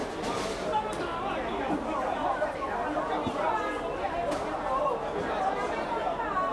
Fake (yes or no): no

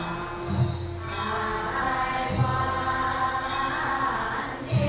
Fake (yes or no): no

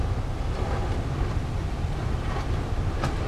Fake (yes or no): no